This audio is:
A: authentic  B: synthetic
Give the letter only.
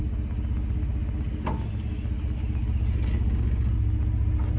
A